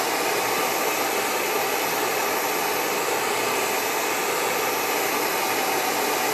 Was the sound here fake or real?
real